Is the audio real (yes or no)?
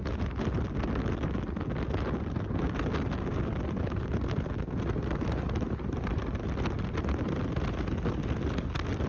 yes